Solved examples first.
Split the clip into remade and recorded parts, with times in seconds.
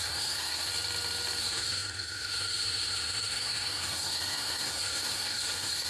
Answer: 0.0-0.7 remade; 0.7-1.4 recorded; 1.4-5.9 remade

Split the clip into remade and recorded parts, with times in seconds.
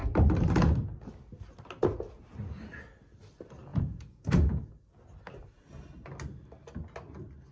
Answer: 0.0-3.7 recorded; 3.7-4.7 remade; 4.7-7.5 recorded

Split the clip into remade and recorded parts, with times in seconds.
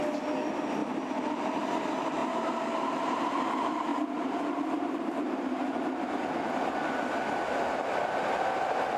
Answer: 0.0-0.8 recorded; 0.8-1.5 remade; 1.5-2.2 recorded; 2.2-3.4 remade; 3.4-3.9 recorded; 3.9-5.8 remade; 5.8-9.0 recorded